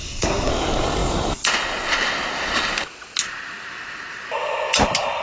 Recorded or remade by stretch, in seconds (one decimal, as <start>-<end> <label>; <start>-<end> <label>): 0.0-0.5 remade; 0.5-5.2 recorded